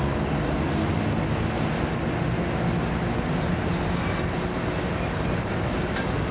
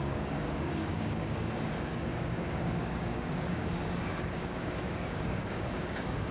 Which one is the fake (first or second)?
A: second